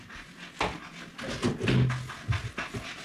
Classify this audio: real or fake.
real